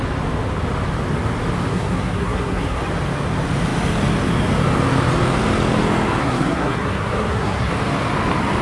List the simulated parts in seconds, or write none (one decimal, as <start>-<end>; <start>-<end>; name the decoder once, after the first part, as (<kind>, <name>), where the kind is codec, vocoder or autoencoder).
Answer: 1.7-2.8 (codec, SNAC); 6.2-7.7